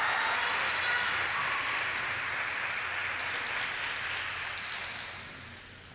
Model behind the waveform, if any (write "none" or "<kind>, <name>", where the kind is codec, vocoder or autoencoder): none